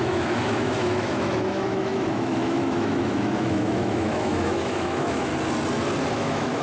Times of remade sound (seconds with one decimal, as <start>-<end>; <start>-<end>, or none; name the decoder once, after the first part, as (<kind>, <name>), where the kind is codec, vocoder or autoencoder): 0.0-5.3 (autoencoder, DAC-VAE); 6.1-6.6